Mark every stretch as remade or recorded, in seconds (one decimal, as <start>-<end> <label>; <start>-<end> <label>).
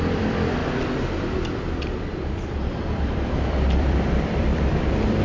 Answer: 0.0-0.6 remade; 0.6-1.2 recorded; 1.2-5.2 remade